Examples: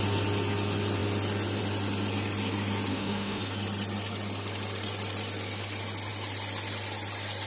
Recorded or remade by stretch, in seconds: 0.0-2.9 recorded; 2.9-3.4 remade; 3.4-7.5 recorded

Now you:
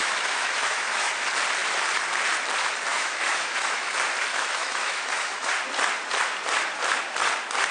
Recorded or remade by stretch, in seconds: 0.0-1.1 remade; 1.1-2.9 recorded; 2.9-3.9 remade; 3.9-4.3 recorded; 4.3-5.5 remade; 5.5-7.7 recorded

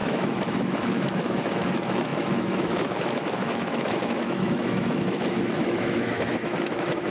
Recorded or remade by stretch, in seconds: 0.0-7.1 remade

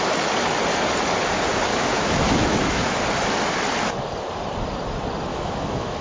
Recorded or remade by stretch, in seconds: 0.0-1.7 recorded; 1.7-3.0 remade; 3.0-5.3 recorded; 5.3-6.0 remade

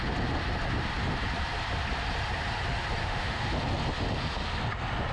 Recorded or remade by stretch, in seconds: 0.0-3.0 recorded; 3.0-3.5 remade; 3.5-5.1 recorded

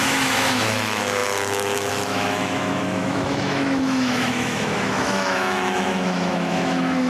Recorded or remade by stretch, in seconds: 0.0-7.1 remade

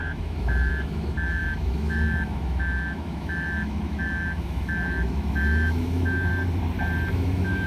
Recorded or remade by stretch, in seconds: 0.0-6.3 remade; 6.3-7.1 recorded; 7.1-7.7 remade